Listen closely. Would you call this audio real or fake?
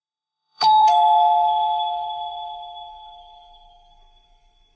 fake